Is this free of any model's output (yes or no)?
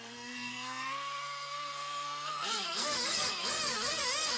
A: no